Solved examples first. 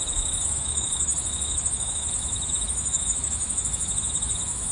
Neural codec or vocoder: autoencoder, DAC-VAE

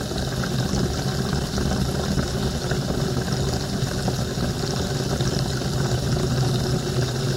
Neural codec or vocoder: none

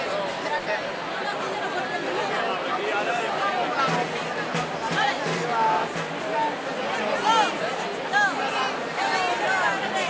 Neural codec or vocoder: none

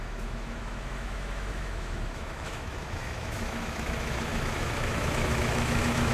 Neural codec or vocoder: autoencoder, DAC-VAE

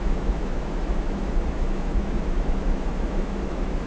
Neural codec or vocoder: autoencoder, DAC-VAE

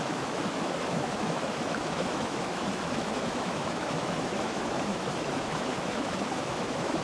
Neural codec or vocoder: autoencoder, DAC-VAE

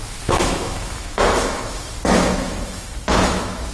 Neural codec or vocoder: autoencoder, DAC-VAE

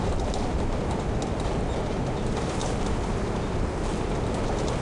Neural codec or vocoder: none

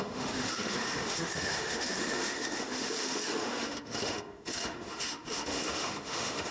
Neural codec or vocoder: autoencoder, DAC-VAE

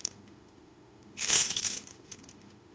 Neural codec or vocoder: autoencoder, DAC-VAE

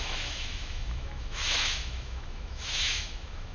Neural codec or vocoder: autoencoder, DAC-VAE